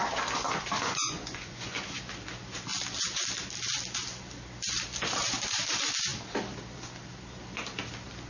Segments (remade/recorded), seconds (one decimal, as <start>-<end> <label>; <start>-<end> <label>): 0.0-0.9 recorded; 0.9-2.0 remade; 2.0-8.3 recorded